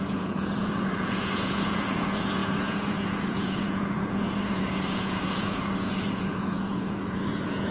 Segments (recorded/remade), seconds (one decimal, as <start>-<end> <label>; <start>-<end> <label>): 0.0-7.7 remade